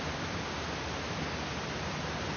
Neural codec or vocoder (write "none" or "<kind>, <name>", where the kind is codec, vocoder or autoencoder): none